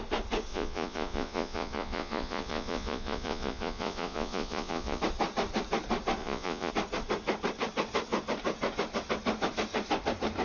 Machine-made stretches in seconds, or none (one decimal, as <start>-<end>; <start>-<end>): 0.5-5.0; 6.2-6.7